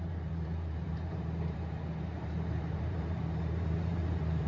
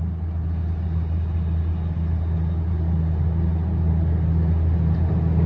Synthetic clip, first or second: first